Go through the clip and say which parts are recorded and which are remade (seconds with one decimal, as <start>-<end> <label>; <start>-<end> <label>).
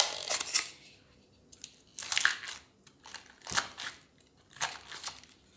0.0-5.6 recorded